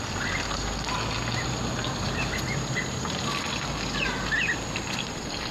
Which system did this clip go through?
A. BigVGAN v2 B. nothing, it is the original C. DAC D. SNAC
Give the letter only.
B